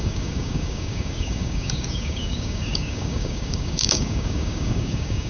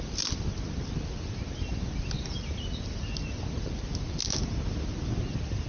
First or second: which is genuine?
second